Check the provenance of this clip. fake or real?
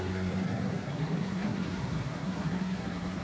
fake